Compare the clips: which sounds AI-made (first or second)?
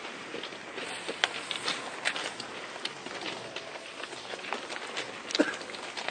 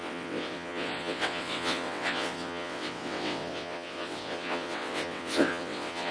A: second